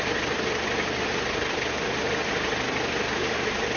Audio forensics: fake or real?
real